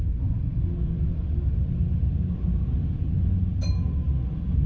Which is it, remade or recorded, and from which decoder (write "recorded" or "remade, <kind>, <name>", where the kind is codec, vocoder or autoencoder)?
recorded